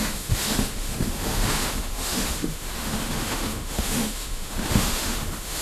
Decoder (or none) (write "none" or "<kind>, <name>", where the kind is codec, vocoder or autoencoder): autoencoder, DAC-VAE